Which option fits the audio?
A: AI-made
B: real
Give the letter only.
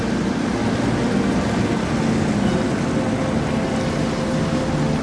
B